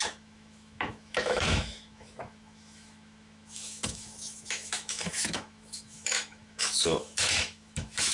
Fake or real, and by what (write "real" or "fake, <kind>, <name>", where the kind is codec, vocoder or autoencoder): fake, autoencoder, DAC-VAE